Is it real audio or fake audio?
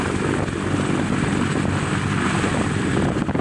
real